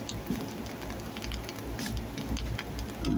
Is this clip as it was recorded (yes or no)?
yes